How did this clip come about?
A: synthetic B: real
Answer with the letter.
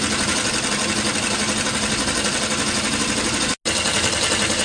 B